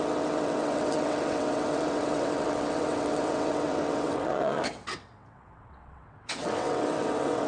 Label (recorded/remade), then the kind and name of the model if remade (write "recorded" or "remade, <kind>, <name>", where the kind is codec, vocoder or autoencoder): remade, vocoder, WaveNeXt